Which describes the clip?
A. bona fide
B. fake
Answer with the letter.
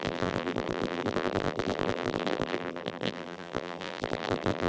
B